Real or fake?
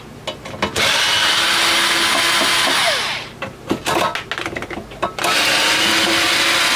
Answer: real